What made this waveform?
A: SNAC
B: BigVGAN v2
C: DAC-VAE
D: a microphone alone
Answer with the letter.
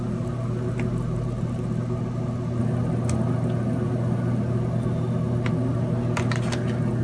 D